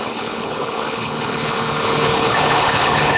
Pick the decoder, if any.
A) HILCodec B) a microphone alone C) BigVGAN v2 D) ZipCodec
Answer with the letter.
A